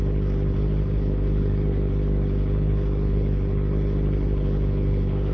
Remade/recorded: remade